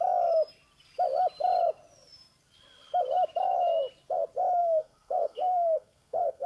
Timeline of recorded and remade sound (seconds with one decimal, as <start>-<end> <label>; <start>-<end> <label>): 0.0-4.6 recorded; 4.6-6.5 remade